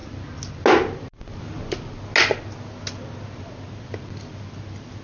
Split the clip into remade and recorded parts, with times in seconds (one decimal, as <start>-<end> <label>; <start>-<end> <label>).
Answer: 0.0-5.0 recorded